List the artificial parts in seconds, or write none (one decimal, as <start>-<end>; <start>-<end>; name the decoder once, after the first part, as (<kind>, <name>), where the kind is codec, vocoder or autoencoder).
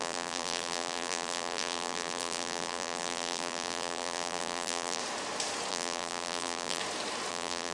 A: 0.0-5.0 (vocoder, BigVGAN v2); 5.7-6.8; 7.3-7.7